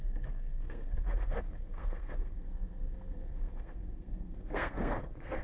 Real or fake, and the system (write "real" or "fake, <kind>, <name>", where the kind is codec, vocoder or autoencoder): fake, codec, SNAC